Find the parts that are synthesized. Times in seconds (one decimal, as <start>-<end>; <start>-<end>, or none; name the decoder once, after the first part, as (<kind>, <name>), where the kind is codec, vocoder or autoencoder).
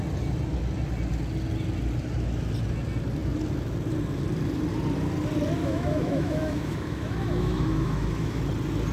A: 5.6-8.4 (autoencoder, DAC-VAE)